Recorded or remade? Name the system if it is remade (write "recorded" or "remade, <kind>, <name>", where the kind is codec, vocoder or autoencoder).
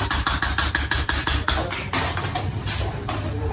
recorded